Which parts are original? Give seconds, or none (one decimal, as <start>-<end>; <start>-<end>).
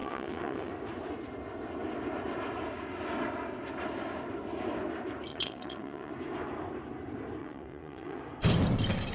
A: 0.7-5.3; 6.1-7.4; 8.2-9.1